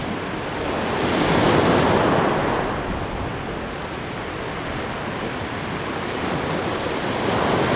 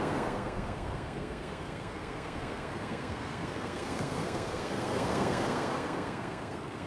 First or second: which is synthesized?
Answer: second